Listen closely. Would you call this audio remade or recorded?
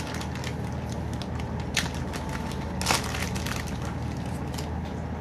recorded